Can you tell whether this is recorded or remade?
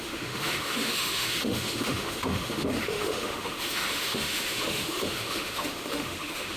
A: remade